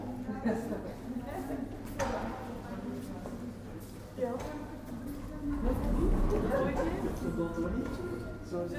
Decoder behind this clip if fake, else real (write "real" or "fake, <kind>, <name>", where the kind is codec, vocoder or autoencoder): real